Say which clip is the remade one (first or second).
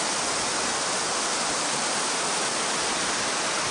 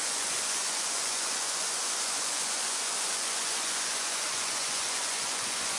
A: second